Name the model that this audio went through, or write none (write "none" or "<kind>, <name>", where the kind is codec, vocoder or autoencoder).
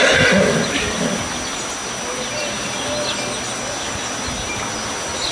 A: none